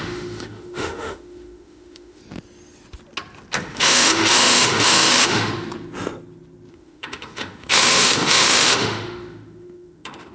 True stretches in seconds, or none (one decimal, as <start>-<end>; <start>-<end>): 2.2-3.6; 5.5-6.7